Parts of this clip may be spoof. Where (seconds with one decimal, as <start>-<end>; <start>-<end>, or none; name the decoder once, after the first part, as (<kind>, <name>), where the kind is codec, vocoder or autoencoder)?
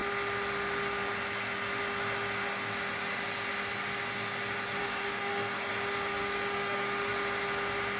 4.8-5.7 (codec, DAC); 6.2-7.1